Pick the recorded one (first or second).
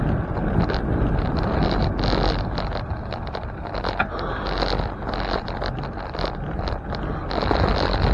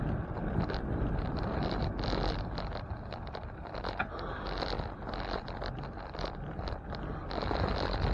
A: first